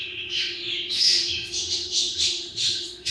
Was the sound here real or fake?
fake